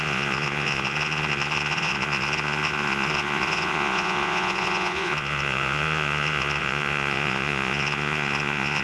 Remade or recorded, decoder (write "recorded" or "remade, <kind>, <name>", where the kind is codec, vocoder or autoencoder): remade, vocoder, Vocos